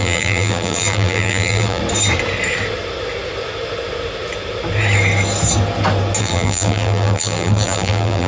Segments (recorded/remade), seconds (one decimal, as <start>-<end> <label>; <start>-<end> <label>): 0.0-1.8 remade; 1.8-6.2 recorded; 6.2-8.3 remade